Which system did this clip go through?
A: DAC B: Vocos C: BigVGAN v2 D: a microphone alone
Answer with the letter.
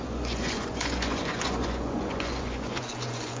B